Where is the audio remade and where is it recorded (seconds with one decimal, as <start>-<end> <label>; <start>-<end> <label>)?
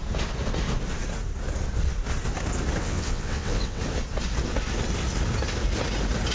0.0-2.8 recorded; 2.8-3.8 remade; 3.8-6.3 recorded